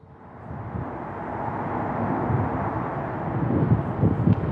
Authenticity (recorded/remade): recorded